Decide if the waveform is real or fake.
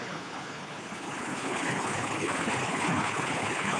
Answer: fake